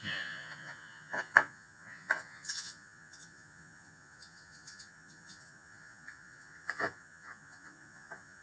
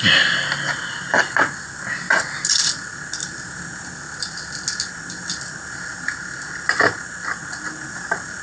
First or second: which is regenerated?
first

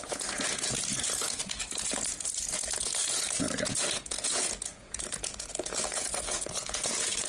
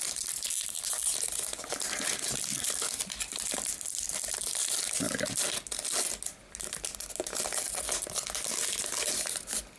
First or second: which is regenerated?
first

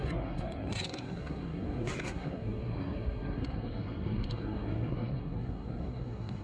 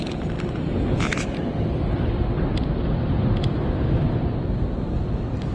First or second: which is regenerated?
first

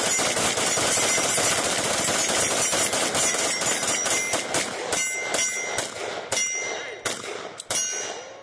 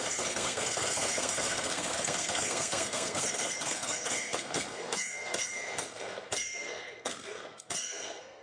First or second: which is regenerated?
second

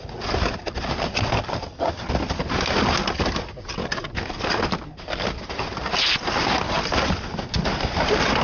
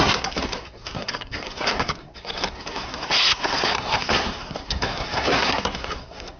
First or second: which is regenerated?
second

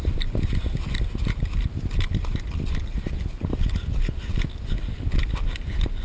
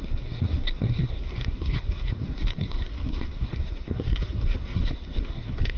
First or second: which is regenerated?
second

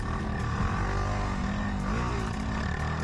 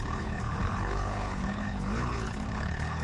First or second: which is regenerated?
second